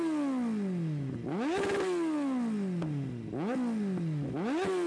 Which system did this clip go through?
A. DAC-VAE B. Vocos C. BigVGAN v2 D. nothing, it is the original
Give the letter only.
D